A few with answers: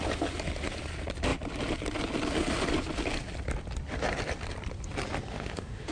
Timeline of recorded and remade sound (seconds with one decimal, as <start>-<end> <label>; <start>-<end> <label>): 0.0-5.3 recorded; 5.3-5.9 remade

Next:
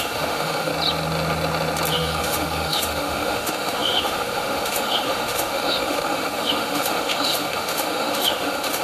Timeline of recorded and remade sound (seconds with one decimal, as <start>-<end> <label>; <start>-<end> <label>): 0.0-0.7 remade; 0.7-1.9 recorded; 1.9-8.8 remade

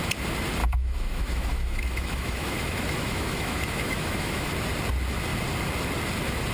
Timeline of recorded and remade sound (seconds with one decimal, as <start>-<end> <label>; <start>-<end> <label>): 0.0-0.6 recorded; 0.6-4.5 remade; 4.5-6.5 recorded